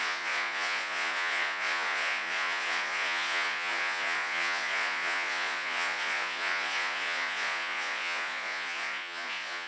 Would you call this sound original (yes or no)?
no